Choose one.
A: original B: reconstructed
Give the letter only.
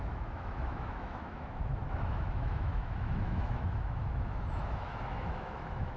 B